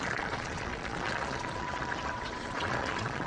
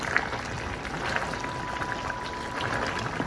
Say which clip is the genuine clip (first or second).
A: second